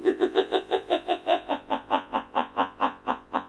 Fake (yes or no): yes